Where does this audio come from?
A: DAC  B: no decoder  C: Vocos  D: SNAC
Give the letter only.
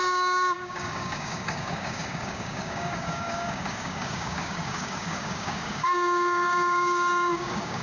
A